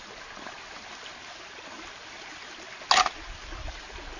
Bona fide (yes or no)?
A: yes